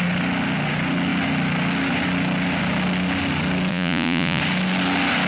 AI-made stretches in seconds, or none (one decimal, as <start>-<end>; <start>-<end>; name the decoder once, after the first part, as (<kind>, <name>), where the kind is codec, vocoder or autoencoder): 3.7-4.4 (vocoder, Vocos)